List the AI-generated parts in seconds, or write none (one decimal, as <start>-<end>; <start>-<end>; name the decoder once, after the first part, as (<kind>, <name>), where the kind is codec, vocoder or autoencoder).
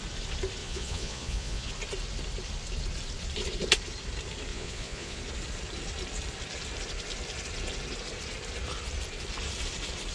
0.6-1.7 (vocoder, Vocos); 4.5-5.2